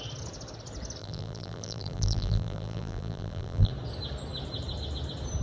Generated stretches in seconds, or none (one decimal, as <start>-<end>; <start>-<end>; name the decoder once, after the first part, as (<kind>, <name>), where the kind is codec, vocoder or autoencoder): 1.0-3.7 (vocoder, BigVGAN v2)